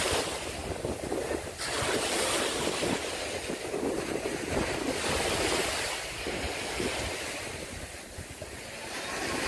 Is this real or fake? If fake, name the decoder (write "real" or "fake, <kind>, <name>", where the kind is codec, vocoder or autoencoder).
real